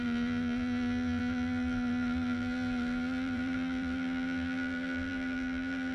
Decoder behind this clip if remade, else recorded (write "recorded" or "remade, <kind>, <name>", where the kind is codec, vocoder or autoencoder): remade, vocoder, BigVGAN v2